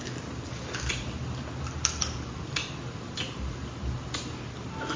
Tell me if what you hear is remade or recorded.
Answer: recorded